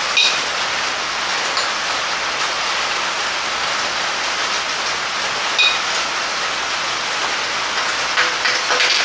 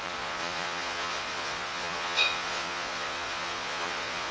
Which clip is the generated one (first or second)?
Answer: second